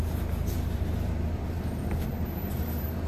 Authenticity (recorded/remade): remade